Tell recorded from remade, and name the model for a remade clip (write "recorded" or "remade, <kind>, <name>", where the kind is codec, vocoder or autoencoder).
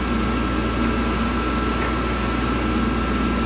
recorded